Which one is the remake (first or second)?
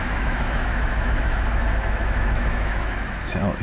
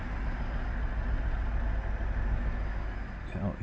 first